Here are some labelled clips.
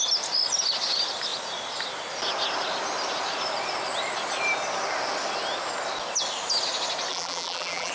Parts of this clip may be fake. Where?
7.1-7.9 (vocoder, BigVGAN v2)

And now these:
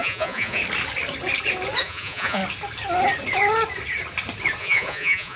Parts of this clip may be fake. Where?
0.0-0.6 (vocoder, Vocos); 1.8-2.4; 4.6-5.4

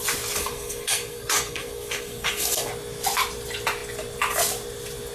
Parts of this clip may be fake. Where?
0.4-2.7 (codec, SNAC)

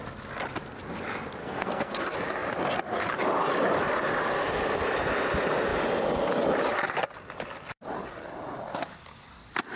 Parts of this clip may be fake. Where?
1.4-2.0 (codec, SNAC)

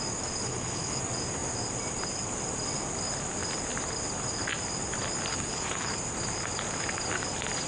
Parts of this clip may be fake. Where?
0.4-1.0 (codec, HILCodec); 5.3-5.9